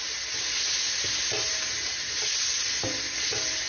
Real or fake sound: real